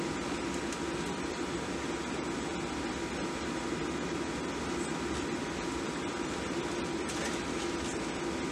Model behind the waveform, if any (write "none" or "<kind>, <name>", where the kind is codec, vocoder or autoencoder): none